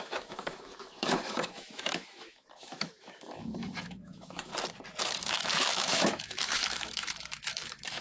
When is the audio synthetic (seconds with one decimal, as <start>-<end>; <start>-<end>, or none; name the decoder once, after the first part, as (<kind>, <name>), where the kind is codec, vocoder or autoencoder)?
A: 0.0-4.5 (autoencoder, DAC-VAE); 5.0-8.0